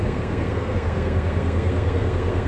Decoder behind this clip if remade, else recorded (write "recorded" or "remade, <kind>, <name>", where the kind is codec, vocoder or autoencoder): remade, codec, SNAC